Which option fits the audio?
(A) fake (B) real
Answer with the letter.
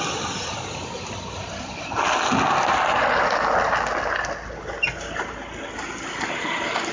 B